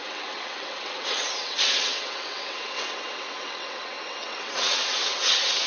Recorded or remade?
remade